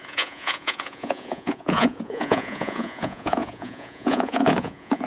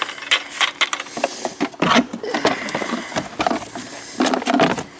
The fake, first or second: first